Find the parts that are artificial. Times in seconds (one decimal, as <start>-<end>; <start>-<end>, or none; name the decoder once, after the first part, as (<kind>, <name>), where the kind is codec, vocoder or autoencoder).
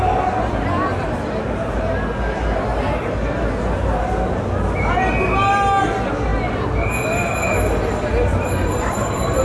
8.3-9.4 (vocoder, BigVGAN v2)